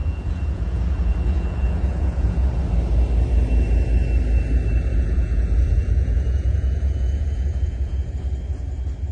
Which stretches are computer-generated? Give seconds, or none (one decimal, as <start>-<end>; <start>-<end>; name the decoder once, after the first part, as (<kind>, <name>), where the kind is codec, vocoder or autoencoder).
0.0-2.6 (vocoder, Vocos); 4.9-8.1